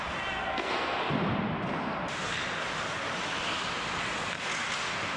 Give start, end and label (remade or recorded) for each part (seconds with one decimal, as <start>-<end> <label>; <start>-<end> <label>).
0.0-0.5 recorded; 0.5-1.1 remade; 1.1-5.2 recorded